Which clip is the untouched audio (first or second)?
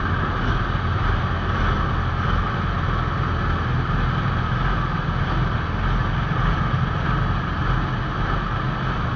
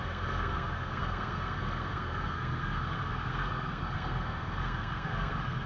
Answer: first